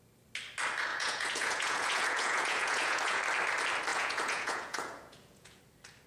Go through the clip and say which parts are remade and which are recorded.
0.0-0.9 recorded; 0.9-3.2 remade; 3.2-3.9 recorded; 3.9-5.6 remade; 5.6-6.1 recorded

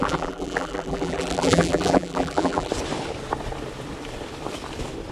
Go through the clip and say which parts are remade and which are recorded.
0.0-2.7 remade; 2.7-5.1 recorded

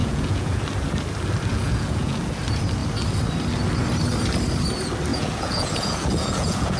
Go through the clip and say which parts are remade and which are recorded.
0.0-0.6 remade; 0.6-1.5 recorded; 1.5-2.2 remade; 2.2-5.1 recorded; 5.1-6.8 remade

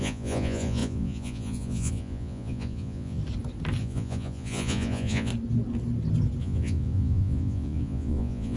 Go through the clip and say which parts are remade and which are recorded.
0.0-3.2 remade; 3.2-3.8 recorded; 3.8-5.3 remade; 5.3-6.4 recorded; 6.4-8.6 remade

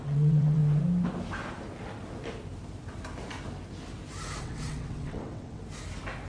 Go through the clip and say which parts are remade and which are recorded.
0.0-0.6 remade; 0.6-4.4 recorded; 4.4-5.6 remade; 5.6-6.3 recorded

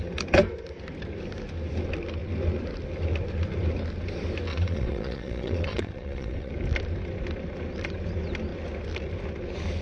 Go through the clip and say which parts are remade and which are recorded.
0.0-4.5 recorded; 4.5-6.5 remade; 6.5-9.8 recorded